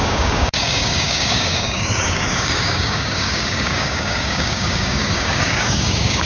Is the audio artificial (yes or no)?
yes